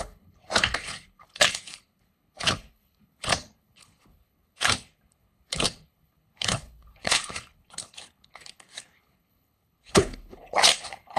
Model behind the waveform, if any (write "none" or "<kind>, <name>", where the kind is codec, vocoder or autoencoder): codec, HILCodec